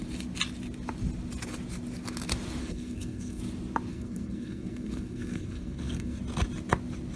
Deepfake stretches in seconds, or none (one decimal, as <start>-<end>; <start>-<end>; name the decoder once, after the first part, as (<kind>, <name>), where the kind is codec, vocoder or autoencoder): 2.6-3.4 (codec, SNAC); 3.9-6.2